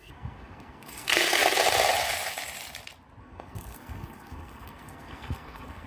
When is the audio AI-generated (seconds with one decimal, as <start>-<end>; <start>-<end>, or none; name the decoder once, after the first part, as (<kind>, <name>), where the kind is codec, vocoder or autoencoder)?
0.0-1.4 (codec, SNAC); 3.2-5.9